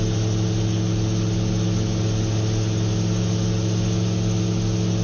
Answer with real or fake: real